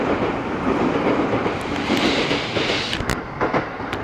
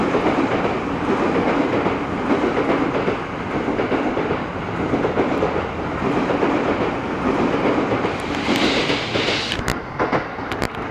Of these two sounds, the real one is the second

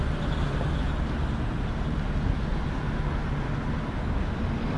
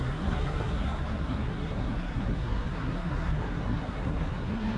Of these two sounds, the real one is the first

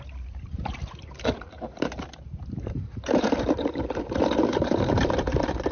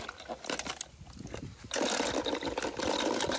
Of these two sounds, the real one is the second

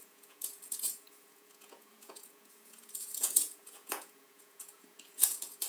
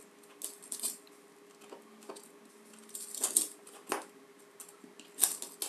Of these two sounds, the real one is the second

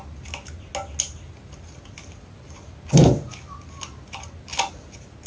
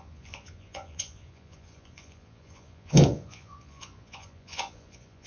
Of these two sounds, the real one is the first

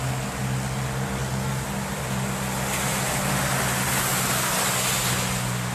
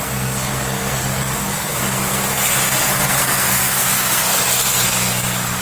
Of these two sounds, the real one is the first